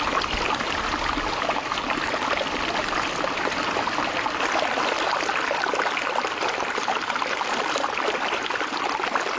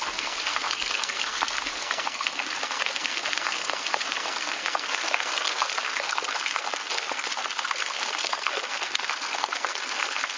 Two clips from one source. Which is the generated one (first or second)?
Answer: second